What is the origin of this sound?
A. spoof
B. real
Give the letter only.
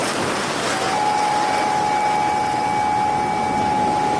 B